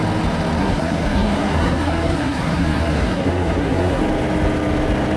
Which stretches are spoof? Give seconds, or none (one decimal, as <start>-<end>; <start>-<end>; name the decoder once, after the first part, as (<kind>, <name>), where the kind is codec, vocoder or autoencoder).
0.6-4.0 (codec, SNAC)